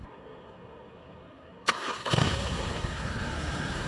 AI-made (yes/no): yes